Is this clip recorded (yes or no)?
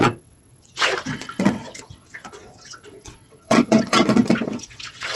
no